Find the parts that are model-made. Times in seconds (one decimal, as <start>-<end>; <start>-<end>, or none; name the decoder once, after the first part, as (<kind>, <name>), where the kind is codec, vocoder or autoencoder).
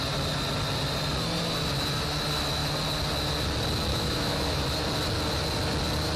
3.9-4.6 (autoencoder, DAC-VAE)